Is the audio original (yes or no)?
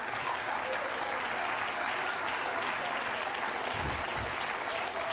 yes